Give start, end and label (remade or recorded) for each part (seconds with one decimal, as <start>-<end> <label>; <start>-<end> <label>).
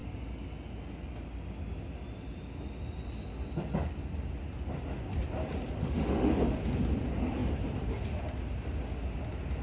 0.0-5.8 recorded; 5.8-6.3 remade; 6.3-9.6 recorded